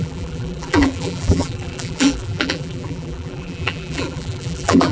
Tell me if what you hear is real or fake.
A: fake